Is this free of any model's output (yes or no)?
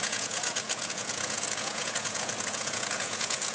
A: no